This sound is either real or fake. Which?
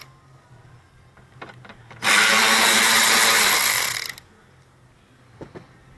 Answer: real